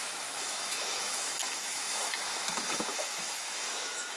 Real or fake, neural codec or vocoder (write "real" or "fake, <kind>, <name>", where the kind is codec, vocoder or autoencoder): fake, autoencoder, DAC-VAE